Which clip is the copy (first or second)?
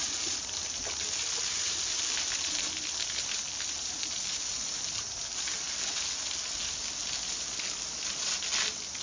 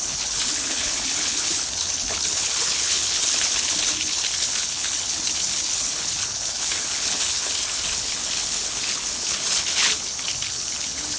second